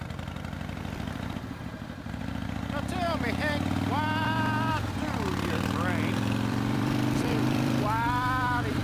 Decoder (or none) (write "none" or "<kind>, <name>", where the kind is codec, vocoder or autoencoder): vocoder, BigVGAN v2